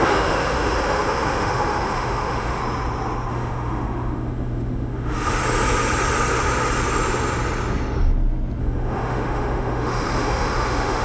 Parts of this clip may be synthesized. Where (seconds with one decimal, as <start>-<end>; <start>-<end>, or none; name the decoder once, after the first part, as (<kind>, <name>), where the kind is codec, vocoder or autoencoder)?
0.0-2.6 (autoencoder, DAC-VAE); 3.3-5.4; 8.6-11.0